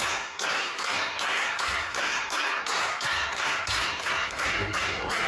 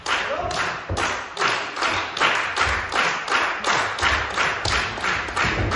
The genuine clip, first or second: second